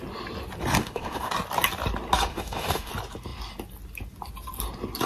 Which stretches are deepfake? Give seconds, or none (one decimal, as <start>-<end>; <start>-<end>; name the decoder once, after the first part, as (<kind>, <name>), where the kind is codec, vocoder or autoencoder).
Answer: 0.8-1.3 (autoencoder, DAC-VAE); 2.3-2.9